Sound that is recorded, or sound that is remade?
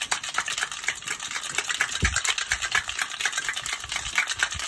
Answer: recorded